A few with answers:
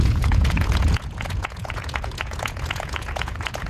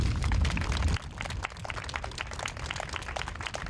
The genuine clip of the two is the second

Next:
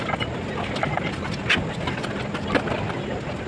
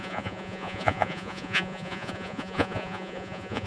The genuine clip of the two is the first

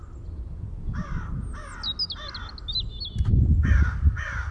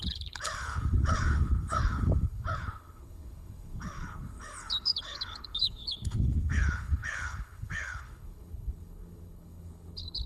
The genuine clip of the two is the first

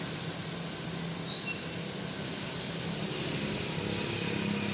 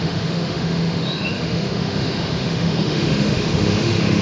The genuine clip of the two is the first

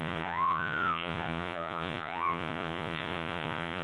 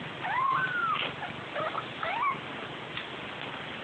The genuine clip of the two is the second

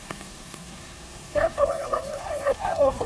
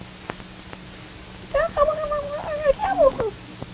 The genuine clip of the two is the second